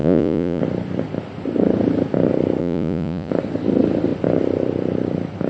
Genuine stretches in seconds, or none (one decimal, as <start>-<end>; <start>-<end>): 0.6-2.6; 3.3-5.5